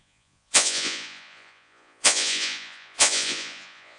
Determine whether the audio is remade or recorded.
remade